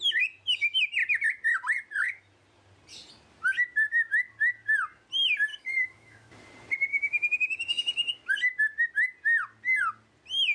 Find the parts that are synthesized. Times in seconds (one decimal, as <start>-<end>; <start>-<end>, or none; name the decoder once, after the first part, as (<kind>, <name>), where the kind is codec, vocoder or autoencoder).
5.5-6.3 (autoencoder, DAC-VAE); 6.9-8.1